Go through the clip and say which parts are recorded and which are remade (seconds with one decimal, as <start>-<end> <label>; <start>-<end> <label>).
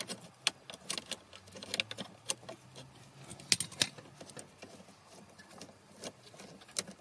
0.0-7.0 recorded